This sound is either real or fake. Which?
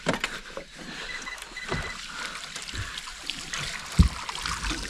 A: real